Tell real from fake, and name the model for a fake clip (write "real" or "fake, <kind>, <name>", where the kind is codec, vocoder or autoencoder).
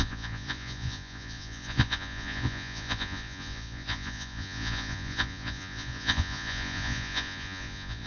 fake, vocoder, Vocos